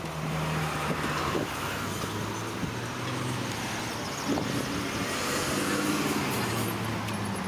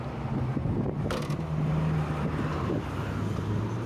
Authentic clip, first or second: first